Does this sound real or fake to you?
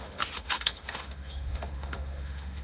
fake